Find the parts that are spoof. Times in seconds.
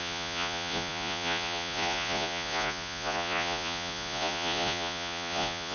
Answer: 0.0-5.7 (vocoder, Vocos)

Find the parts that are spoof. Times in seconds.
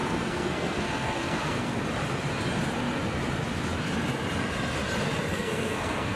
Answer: 0.0-1.8 (codec, SNAC); 5.3-6.2